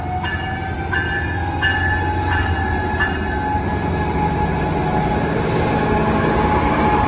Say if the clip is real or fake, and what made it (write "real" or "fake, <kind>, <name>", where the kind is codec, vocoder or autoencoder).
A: real